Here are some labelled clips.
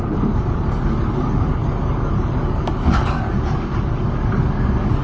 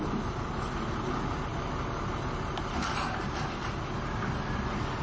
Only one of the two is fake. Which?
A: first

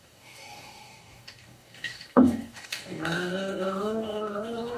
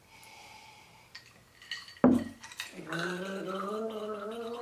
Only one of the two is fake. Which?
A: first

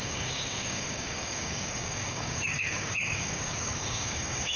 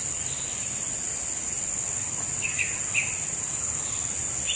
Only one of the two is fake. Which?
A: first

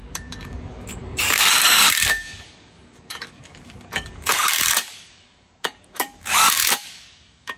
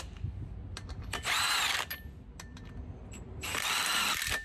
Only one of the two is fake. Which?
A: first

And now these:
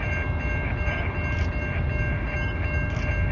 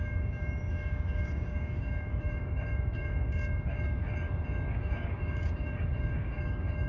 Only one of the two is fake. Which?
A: second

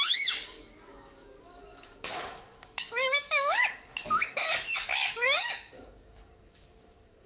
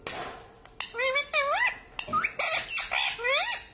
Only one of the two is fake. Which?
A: first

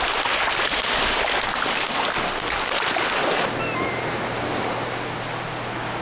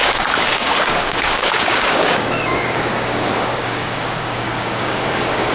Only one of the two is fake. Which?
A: second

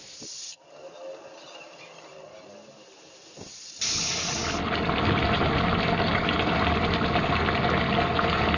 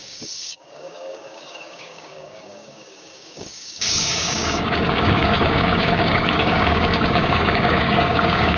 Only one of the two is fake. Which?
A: second